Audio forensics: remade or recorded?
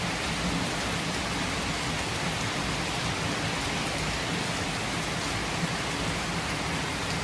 recorded